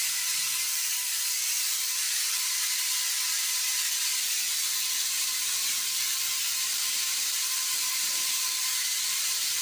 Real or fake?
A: fake